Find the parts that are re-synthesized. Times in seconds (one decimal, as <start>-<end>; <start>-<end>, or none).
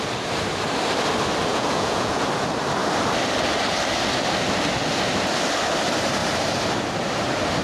1.5-2.3